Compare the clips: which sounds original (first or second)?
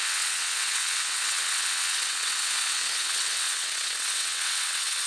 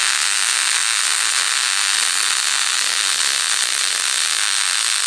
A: second